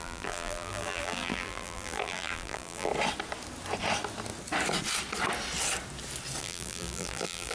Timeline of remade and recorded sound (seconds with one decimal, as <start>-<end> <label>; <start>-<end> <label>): 0.0-2.9 remade; 2.9-6.4 recorded; 6.4-7.5 remade